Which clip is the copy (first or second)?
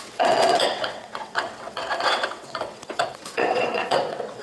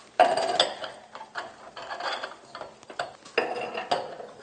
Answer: first